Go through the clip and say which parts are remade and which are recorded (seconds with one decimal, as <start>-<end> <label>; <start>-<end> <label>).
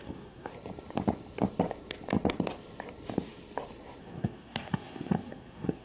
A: 0.0-0.5 remade; 0.5-4.0 recorded; 4.0-5.8 remade